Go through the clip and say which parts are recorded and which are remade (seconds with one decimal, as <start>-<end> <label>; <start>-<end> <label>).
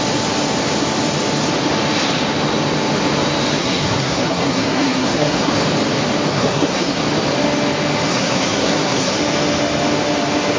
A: 0.0-3.6 recorded; 3.6-5.5 remade; 5.5-6.3 recorded; 6.3-7.0 remade; 7.0-8.1 recorded; 8.1-9.2 remade; 9.2-10.6 recorded